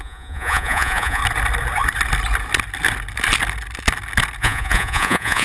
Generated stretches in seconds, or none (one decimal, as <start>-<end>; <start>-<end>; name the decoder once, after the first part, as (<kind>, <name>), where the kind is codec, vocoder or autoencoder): 0.0-1.2 (vocoder, Vocos); 4.4-5.4